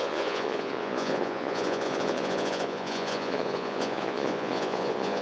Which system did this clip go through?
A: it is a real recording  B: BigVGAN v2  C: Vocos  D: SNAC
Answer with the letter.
C